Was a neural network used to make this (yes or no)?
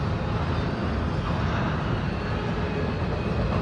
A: no